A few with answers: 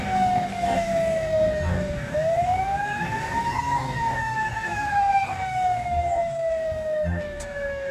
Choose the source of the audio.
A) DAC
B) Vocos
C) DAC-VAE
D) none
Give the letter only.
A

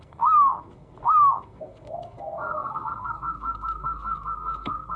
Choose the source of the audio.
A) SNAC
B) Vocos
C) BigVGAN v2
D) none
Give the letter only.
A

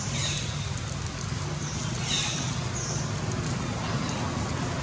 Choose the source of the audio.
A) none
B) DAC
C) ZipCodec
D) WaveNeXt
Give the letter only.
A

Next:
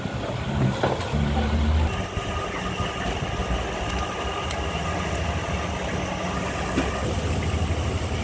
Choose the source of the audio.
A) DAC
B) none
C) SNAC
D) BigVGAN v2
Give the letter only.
B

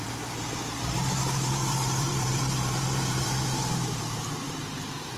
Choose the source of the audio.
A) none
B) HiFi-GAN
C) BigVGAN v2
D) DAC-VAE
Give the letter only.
C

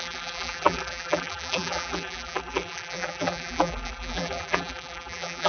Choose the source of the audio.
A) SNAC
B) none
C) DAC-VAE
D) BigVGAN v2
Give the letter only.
D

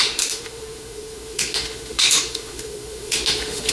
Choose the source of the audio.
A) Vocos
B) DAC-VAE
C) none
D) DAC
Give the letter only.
B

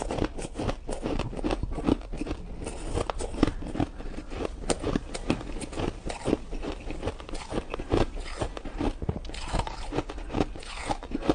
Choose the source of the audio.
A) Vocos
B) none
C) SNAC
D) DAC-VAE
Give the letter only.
B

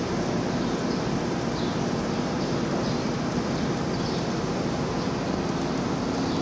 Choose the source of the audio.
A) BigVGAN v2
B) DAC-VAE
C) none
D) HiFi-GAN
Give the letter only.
C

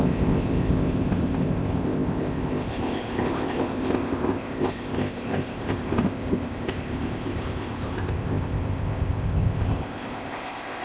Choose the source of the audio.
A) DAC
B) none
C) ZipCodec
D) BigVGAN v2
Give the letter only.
C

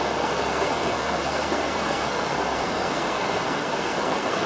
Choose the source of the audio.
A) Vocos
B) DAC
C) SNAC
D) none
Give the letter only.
C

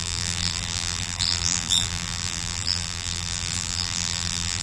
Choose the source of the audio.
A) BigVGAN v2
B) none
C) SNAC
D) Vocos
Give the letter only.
A